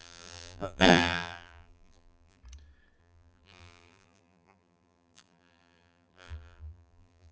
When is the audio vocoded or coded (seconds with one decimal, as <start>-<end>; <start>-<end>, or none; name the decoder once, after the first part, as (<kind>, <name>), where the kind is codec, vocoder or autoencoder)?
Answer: 0.0-2.4 (vocoder, BigVGAN v2); 3.0-7.3